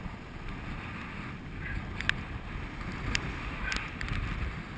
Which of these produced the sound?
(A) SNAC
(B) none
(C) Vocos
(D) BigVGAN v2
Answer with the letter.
B